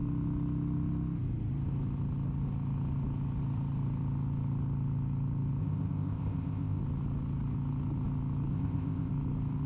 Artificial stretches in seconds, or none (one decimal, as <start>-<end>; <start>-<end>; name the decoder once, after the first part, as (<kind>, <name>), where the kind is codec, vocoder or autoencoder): 5.6-6.8 (codec, ZipCodec); 8.5-9.1